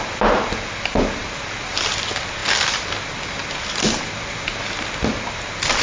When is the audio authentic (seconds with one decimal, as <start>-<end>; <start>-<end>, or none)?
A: 0.0-5.8